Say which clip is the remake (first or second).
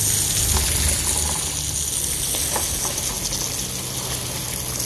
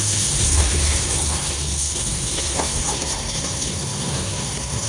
second